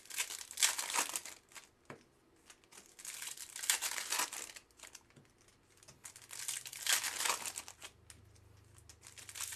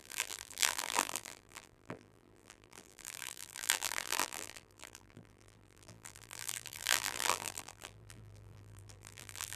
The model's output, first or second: second